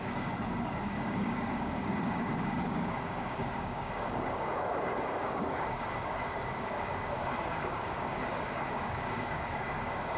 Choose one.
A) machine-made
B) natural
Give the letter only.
A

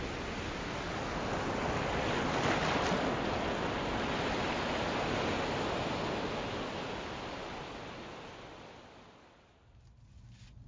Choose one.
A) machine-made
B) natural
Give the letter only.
B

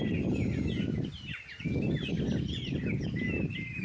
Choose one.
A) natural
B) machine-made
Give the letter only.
A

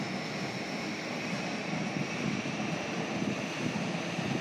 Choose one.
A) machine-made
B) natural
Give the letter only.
B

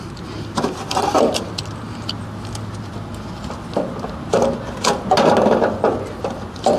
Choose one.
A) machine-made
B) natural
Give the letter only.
B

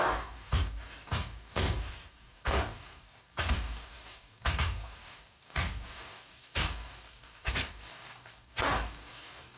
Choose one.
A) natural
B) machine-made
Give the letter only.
B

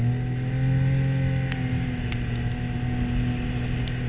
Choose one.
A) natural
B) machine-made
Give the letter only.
A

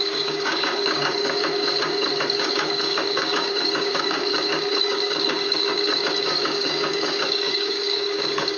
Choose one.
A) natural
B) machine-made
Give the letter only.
B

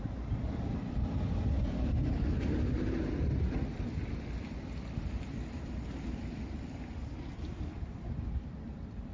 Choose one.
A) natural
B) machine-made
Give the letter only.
A